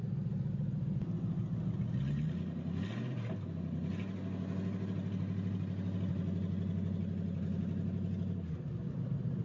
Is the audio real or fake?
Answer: real